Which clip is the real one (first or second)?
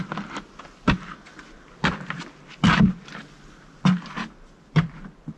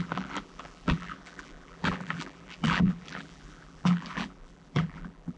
first